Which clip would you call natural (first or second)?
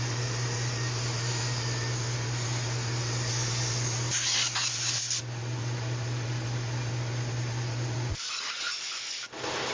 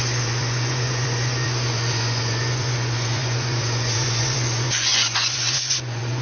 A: first